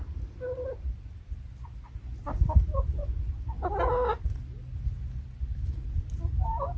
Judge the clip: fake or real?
real